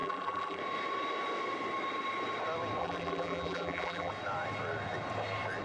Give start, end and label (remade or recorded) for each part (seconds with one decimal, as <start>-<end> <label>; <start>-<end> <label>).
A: 0.0-0.6 remade; 0.6-2.8 recorded; 2.8-4.1 remade; 4.1-5.6 recorded